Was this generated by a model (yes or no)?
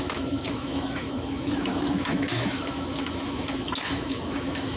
yes